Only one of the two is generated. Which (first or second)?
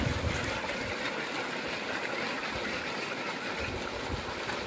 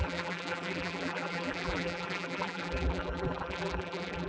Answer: second